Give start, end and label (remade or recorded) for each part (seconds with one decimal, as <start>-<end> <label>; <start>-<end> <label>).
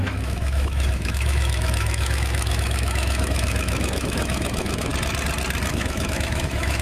0.0-4.9 remade; 4.9-5.7 recorded; 5.7-6.8 remade